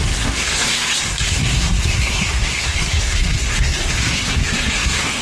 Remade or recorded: remade